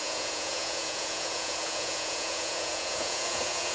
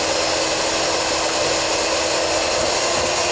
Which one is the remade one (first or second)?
first